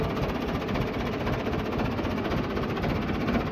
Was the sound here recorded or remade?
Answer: recorded